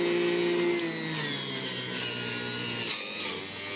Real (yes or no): yes